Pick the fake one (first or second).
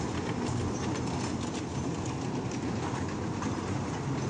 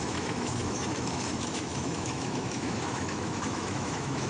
second